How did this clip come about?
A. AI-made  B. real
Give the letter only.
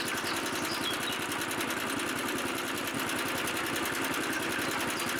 B